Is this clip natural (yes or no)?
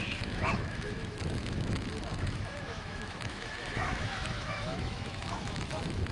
no